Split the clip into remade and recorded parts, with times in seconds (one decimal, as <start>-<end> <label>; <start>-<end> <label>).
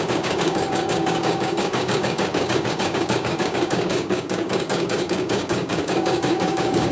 0.0-6.9 remade